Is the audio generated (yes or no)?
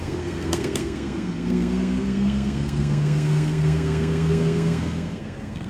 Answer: yes